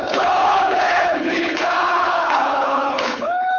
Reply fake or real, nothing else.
fake